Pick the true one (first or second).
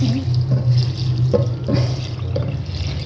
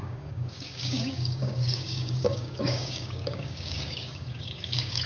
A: first